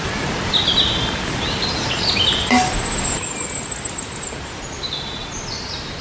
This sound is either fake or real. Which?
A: real